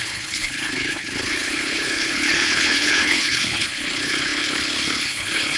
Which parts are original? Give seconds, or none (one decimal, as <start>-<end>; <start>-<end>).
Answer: none